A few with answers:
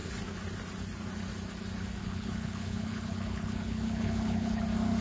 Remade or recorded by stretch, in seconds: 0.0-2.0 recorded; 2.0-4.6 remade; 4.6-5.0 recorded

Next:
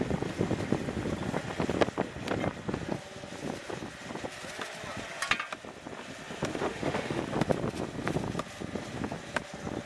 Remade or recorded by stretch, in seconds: 0.0-6.5 recorded; 6.5-7.2 remade; 7.2-9.9 recorded

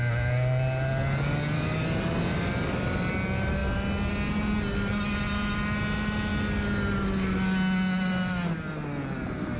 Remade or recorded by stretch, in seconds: 0.0-9.6 recorded

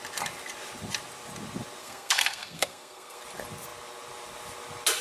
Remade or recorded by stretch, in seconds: 0.0-1.8 recorded; 1.8-3.2 remade; 3.2-5.0 recorded

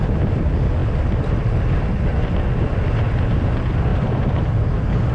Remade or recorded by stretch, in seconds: 0.0-3.9 recorded; 3.9-4.4 remade; 4.4-5.1 recorded

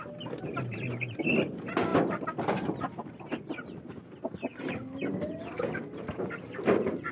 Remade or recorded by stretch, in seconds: 0.0-7.1 recorded